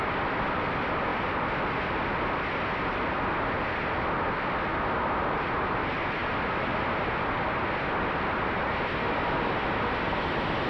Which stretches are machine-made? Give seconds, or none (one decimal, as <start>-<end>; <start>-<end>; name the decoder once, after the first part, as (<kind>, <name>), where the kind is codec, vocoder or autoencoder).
none